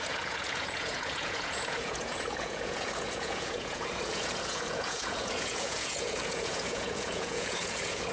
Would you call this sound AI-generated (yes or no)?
yes